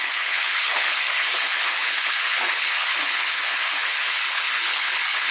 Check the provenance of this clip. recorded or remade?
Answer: remade